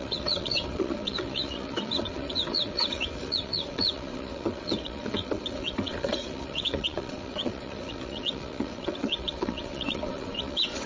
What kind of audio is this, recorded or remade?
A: remade